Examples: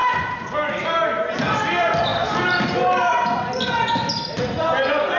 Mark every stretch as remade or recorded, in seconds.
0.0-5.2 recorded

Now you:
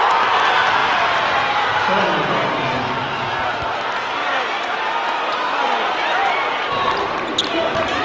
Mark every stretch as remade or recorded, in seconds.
0.0-8.0 recorded

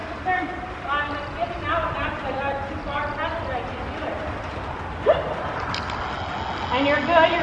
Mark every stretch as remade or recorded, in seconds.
0.0-7.4 recorded

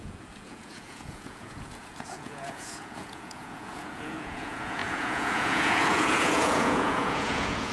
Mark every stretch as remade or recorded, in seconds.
0.0-7.7 remade

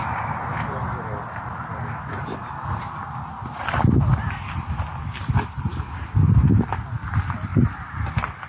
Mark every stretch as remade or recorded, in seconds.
0.0-8.5 recorded

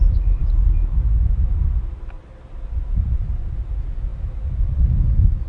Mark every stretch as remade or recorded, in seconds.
0.0-5.5 recorded

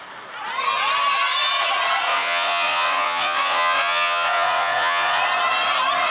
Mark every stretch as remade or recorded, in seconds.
0.0-2.1 recorded; 2.1-5.2 remade; 5.2-6.1 recorded

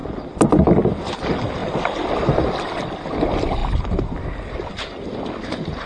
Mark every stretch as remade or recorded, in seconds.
0.0-5.9 recorded